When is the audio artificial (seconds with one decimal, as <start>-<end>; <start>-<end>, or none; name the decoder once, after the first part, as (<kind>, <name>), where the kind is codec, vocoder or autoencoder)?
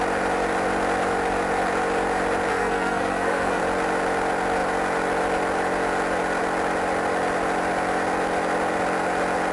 2.5-3.6 (codec, SNAC)